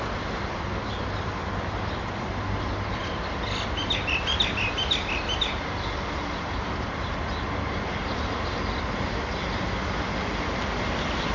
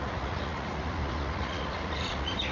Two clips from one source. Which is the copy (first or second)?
second